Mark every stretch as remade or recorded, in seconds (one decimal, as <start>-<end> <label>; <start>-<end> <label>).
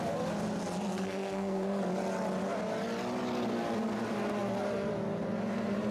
0.0-0.9 recorded; 0.9-1.8 remade; 1.8-5.9 recorded